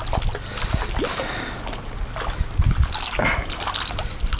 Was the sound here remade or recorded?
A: recorded